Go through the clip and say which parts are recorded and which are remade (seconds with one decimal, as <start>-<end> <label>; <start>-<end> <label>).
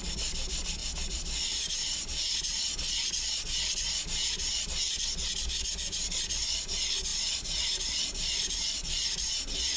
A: 0.0-7.1 recorded; 7.1-9.3 remade; 9.3-9.8 recorded